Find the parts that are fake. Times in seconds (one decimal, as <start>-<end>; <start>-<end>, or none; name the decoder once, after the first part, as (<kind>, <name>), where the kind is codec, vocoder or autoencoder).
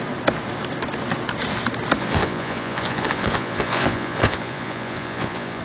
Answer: 2.0-5.6 (vocoder, Vocos)